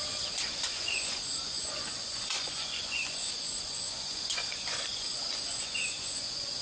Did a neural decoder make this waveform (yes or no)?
yes